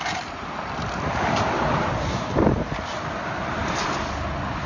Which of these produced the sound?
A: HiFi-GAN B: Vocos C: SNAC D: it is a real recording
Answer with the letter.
D